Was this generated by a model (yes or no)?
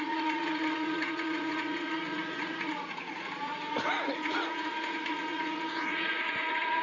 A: yes